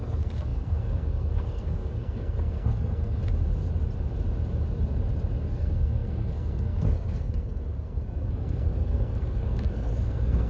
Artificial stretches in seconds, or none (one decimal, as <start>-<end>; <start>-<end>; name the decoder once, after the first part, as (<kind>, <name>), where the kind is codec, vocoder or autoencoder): 0.0-3.2 (codec, SNAC); 5.4-10.5